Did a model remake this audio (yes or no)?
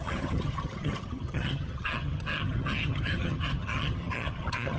yes